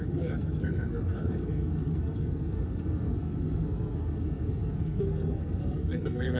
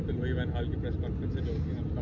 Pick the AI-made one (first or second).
first